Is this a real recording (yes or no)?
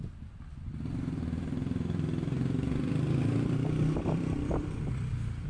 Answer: no